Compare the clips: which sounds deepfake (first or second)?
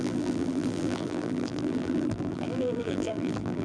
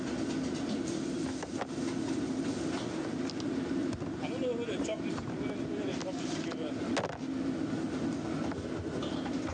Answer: first